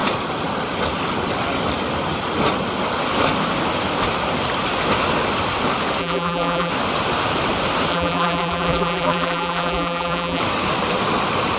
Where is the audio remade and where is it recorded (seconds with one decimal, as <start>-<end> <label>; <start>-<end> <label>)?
0.0-6.0 recorded; 6.0-6.7 remade; 6.7-7.9 recorded; 7.9-10.4 remade; 10.4-11.6 recorded